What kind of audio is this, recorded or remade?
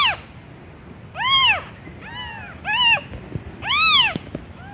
recorded